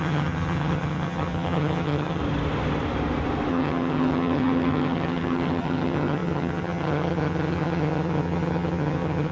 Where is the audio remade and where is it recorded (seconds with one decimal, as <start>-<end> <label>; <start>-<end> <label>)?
0.0-2.2 remade; 2.2-3.5 recorded; 3.5-9.3 remade